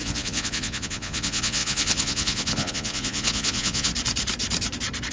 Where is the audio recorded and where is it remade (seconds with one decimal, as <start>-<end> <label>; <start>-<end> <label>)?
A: 0.0-3.9 remade; 3.9-5.1 recorded